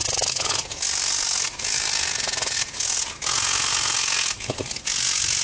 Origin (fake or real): real